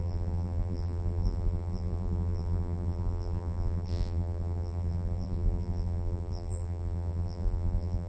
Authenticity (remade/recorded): remade